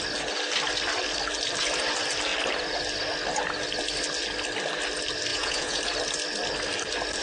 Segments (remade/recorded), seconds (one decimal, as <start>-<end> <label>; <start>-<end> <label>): 0.0-5.3 recorded; 5.3-5.8 remade; 5.8-7.2 recorded